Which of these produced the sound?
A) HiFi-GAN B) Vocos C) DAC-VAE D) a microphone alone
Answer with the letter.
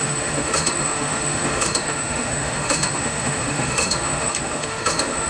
C